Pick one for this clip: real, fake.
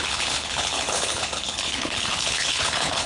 fake